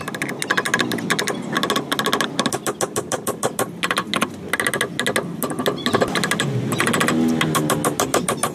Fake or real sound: real